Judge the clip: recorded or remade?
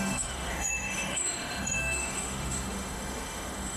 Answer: remade